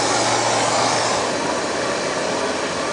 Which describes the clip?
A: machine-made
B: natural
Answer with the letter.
B